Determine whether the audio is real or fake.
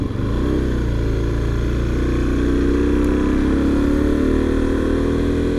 real